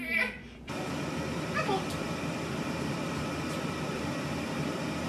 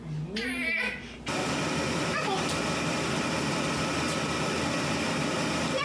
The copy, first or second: first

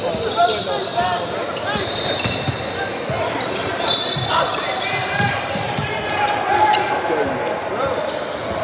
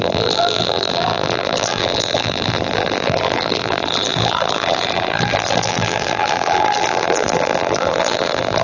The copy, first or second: second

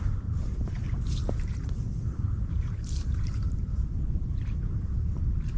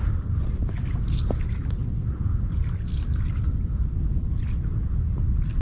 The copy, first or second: first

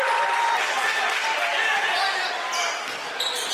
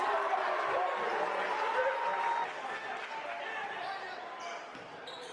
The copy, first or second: first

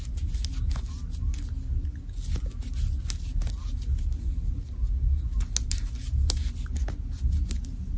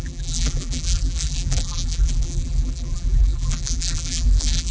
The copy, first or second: second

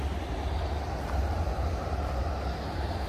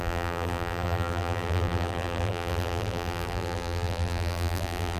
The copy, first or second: second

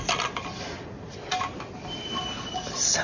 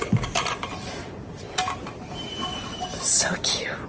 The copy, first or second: second